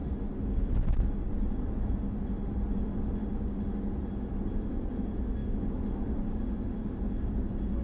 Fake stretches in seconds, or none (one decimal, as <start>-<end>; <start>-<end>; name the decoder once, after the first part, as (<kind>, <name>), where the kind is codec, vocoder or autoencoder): none